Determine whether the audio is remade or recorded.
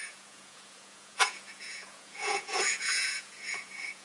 remade